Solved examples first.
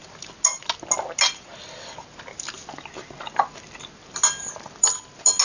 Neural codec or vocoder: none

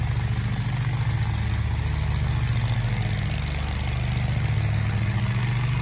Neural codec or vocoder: none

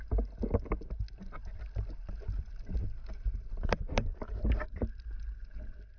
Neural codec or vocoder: none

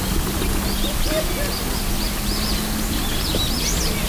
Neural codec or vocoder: none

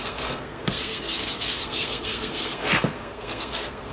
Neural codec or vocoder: codec, SNAC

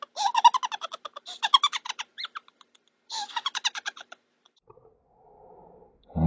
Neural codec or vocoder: none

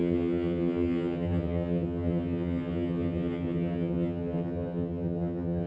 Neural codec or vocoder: vocoder, HiFi-GAN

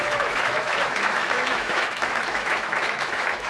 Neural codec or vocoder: autoencoder, DAC-VAE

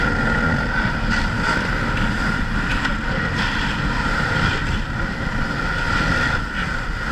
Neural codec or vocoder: none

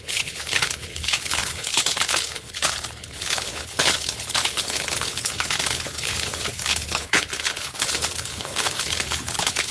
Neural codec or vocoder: codec, HILCodec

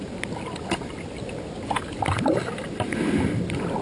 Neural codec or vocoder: none